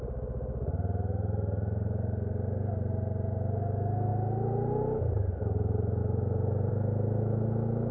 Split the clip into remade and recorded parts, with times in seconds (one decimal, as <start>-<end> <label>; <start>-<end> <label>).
0.0-7.9 recorded